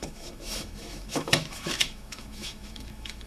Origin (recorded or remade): remade